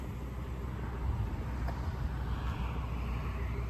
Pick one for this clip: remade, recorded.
recorded